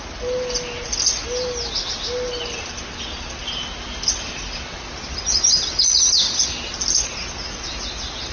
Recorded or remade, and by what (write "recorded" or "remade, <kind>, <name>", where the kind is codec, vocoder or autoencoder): recorded